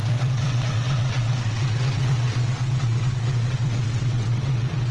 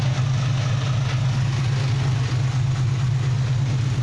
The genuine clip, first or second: second